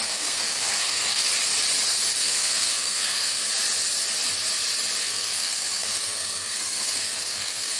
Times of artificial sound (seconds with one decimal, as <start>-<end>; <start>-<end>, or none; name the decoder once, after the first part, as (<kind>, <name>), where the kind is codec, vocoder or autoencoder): 0.0-1.3 (codec, SNAC); 2.2-3.4; 5.0-7.8